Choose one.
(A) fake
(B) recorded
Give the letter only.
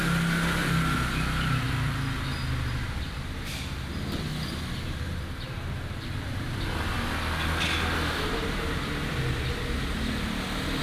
B